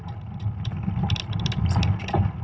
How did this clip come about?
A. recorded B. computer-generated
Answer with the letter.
A